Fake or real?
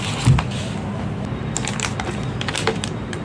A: real